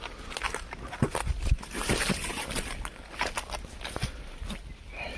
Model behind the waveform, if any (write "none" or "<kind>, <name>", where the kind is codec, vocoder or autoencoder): none